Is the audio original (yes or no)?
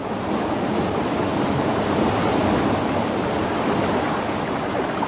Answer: yes